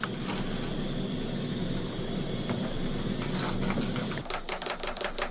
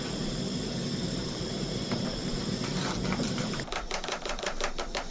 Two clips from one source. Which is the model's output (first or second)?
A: second